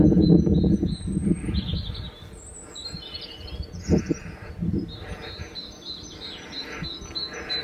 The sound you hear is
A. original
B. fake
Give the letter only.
A